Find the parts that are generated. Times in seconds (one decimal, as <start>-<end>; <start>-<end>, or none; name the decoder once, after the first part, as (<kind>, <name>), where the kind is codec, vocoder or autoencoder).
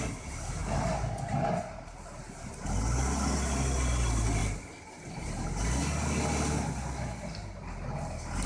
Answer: none